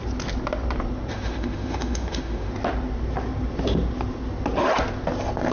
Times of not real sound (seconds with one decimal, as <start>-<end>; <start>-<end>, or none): 1.1-2.5